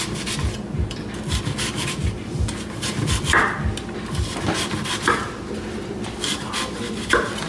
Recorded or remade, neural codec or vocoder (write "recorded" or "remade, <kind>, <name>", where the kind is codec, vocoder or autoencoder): recorded